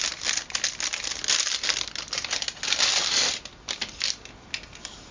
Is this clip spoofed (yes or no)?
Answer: no